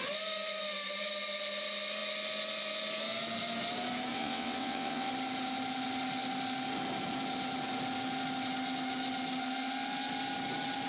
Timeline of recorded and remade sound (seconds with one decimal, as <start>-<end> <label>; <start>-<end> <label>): 0.0-4.1 recorded; 4.1-5.1 remade; 5.1-10.9 recorded